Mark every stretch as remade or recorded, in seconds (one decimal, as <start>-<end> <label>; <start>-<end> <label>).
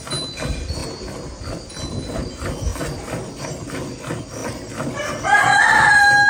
0.0-6.3 recorded